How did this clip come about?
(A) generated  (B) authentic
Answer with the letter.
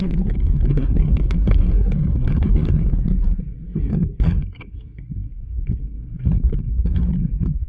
A